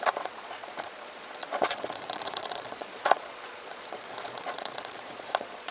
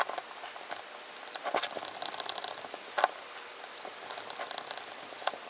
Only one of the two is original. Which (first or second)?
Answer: second